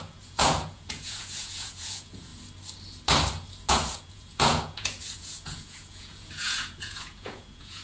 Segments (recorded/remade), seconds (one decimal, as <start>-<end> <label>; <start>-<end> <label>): 0.0-2.3 remade; 2.3-3.7 recorded; 3.7-7.8 remade